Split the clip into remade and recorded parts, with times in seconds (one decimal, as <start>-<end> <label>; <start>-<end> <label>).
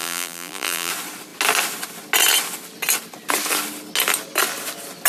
0.0-0.9 remade; 0.9-5.1 recorded